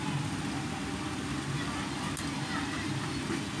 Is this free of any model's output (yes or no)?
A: yes